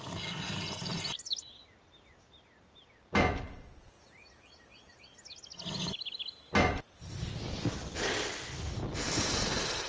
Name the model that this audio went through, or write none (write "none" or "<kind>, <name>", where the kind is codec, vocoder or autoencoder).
none